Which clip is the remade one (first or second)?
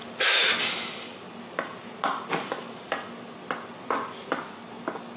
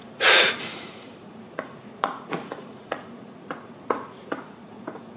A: second